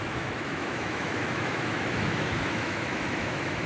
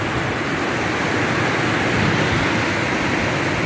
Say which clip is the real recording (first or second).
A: second